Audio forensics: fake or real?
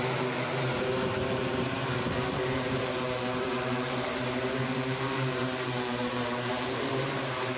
fake